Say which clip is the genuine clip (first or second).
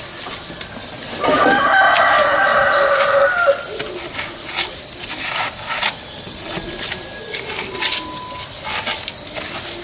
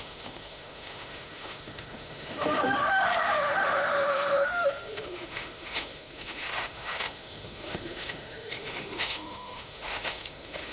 first